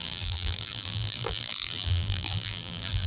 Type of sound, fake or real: fake